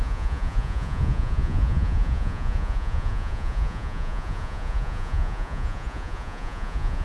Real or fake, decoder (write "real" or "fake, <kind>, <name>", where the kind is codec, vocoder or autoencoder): fake, vocoder, Vocos